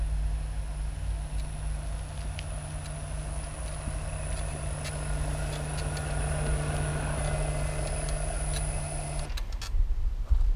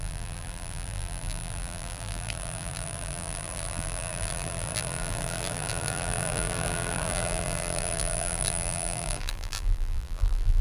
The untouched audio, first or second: first